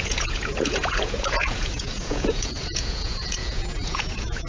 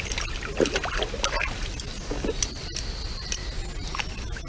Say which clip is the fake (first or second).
first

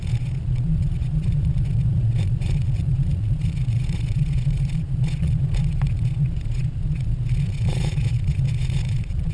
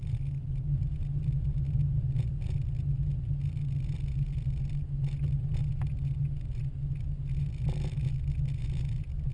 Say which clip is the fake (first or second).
first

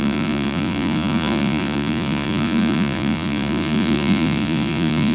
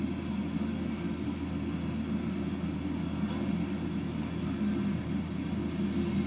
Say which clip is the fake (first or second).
first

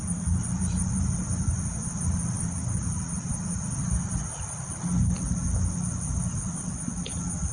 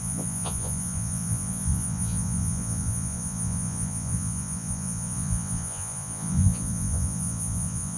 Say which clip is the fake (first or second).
second